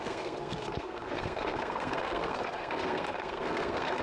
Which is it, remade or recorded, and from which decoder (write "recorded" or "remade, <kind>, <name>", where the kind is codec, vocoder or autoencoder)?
remade, codec, SNAC